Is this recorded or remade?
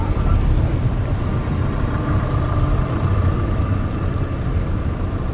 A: remade